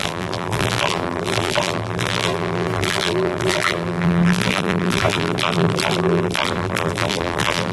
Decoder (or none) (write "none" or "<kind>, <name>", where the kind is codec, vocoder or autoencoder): vocoder, BigVGAN v2